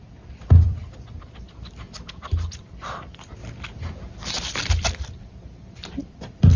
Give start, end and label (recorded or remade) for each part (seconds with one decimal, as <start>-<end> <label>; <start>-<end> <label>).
0.0-0.8 remade; 0.8-2.7 recorded; 2.7-3.4 remade; 3.4-4.7 recorded; 4.7-6.6 remade